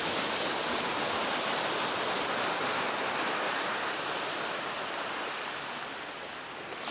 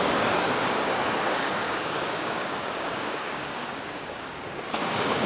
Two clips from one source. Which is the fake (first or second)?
second